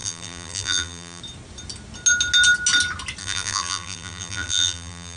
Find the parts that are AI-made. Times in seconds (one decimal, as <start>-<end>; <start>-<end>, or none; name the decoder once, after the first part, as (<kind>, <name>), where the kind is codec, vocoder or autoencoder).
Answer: 0.0-1.2 (vocoder, BigVGAN v2); 3.2-5.2